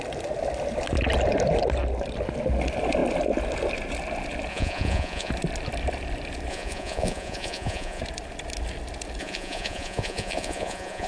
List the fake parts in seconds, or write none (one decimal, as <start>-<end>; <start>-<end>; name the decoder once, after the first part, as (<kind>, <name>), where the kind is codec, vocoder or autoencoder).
4.5-5.3 (vocoder, Vocos); 6.5-8.0; 9.2-11.1

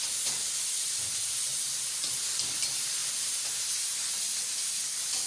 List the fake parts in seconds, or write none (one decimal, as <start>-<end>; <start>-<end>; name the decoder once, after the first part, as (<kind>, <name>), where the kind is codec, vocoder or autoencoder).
1.5-2.1 (vocoder, BigVGAN v2)

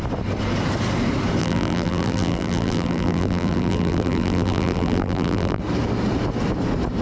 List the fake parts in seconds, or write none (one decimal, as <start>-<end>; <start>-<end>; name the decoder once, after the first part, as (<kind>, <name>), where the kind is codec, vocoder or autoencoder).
1.4-5.6 (vocoder, BigVGAN v2)

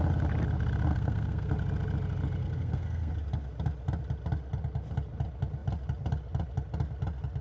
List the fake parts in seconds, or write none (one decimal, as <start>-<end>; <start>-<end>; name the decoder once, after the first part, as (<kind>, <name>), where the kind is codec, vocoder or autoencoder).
0.9-1.5 (codec, SNAC); 2.4-3.1

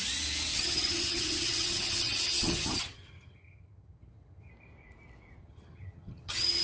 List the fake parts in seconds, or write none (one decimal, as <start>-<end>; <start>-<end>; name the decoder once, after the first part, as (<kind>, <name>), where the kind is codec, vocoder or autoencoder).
0.5-4.5 (vocoder, HiFi-GAN); 5.4-6.6

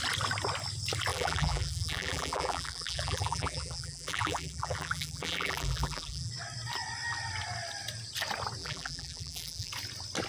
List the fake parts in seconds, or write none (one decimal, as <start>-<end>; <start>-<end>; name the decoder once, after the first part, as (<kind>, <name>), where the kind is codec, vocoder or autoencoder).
1.1-6.3 (vocoder, BigVGAN v2); 8.6-9.7

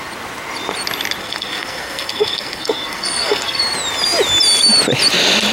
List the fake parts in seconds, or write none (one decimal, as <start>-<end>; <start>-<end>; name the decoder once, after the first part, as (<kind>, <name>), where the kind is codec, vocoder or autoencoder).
1.2-3.6 (codec, SNAC)

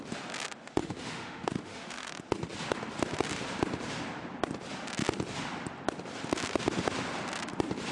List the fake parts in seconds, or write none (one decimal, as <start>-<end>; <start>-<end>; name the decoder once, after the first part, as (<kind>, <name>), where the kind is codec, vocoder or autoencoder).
0.8-2.1 (autoencoder, DAC-VAE)